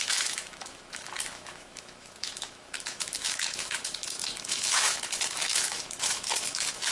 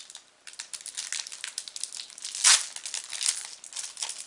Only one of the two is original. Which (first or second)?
second